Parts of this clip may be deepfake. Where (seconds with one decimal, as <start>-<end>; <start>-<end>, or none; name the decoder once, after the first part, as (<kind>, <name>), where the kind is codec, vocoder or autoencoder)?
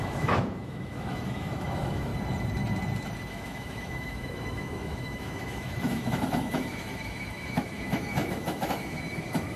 0.0-2.1 (autoencoder, DAC-VAE); 3.3-9.6